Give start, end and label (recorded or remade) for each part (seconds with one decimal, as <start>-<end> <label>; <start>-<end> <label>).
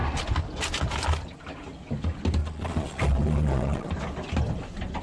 0.0-2.4 recorded; 2.4-3.9 remade; 3.9-5.0 recorded